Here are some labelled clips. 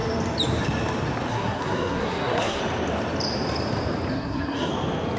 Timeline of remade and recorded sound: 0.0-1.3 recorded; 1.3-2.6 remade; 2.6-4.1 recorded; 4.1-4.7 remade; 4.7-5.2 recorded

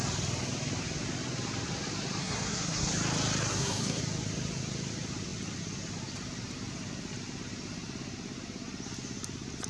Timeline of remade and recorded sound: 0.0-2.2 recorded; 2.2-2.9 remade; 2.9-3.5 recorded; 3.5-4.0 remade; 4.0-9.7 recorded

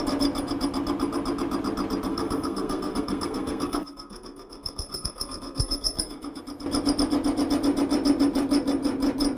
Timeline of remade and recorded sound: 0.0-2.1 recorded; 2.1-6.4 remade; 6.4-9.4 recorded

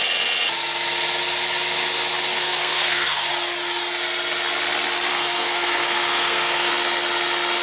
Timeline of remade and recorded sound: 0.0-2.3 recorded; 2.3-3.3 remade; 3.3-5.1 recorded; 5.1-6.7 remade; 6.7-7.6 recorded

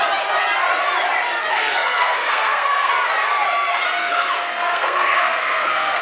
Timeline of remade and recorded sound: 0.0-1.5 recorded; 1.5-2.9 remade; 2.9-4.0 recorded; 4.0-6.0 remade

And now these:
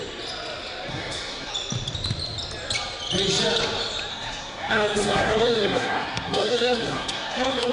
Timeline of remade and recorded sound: 0.0-0.9 recorded; 0.9-1.5 remade; 1.5-4.1 recorded; 4.1-7.7 remade

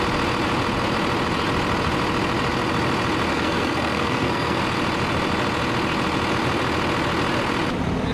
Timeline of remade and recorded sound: 0.0-3.3 recorded; 3.3-4.6 remade; 4.6-8.1 recorded